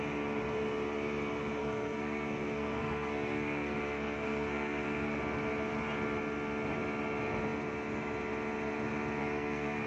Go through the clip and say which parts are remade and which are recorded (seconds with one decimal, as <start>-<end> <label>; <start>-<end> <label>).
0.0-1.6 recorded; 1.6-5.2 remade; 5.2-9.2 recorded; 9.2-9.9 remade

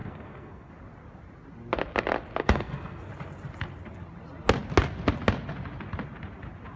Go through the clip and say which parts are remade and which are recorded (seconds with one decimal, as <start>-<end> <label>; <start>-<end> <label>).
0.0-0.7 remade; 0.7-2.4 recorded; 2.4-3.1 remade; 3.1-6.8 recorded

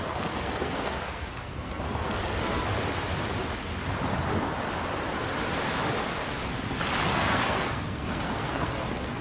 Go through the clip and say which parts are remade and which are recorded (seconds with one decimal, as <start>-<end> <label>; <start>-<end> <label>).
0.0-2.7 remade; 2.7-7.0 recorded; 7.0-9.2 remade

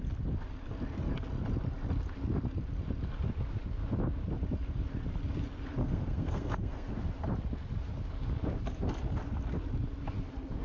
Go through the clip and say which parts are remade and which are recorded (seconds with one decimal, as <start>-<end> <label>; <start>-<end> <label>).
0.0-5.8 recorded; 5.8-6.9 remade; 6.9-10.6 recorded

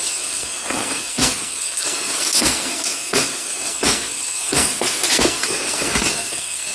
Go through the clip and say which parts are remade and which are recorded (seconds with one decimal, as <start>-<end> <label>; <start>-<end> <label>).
0.0-6.7 remade